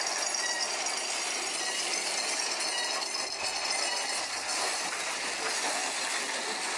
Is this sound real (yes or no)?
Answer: yes